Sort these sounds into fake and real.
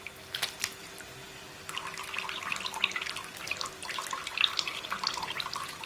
real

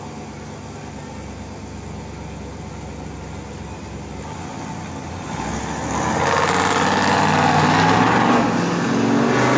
real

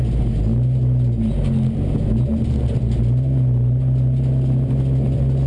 real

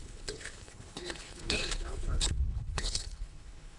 fake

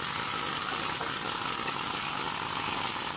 real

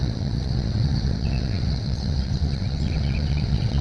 fake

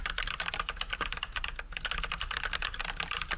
real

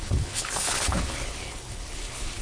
fake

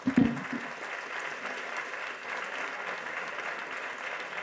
real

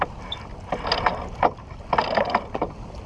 real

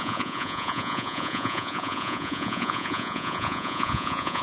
fake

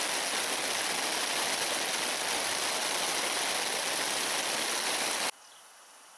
real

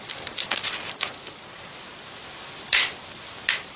real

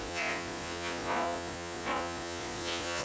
fake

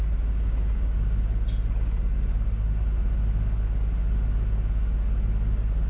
real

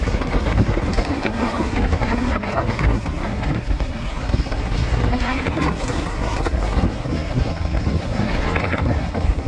fake